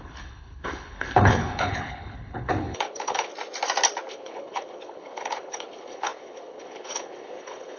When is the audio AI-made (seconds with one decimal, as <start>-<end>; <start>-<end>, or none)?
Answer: 0.0-3.3; 4.1-7.8